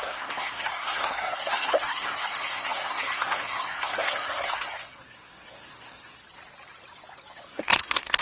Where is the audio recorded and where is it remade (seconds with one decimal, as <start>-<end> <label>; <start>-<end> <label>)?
0.0-6.2 remade; 6.2-7.3 recorded; 7.3-8.2 remade